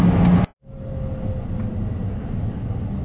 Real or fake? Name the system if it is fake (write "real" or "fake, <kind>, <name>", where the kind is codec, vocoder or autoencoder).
real